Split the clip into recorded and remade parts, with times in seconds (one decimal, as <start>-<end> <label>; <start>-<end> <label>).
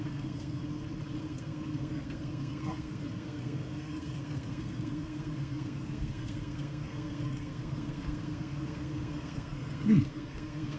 0.0-0.6 remade; 0.6-1.2 recorded; 1.2-10.8 remade